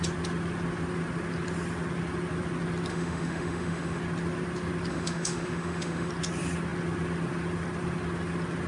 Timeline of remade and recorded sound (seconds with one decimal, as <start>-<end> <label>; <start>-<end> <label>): 0.0-2.9 recorded; 2.9-4.0 remade; 4.0-4.9 recorded; 4.9-6.1 remade; 6.1-8.7 recorded